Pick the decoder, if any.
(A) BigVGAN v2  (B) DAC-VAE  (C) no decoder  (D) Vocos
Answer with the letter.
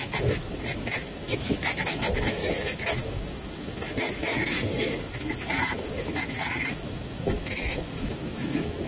B